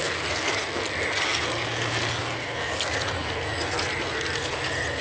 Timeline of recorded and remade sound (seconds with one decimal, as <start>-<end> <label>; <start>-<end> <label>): 0.0-5.0 recorded